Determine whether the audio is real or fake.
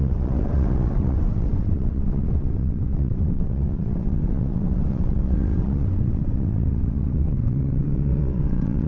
fake